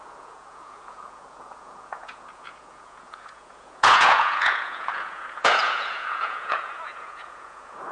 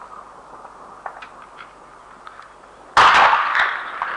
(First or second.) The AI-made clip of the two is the first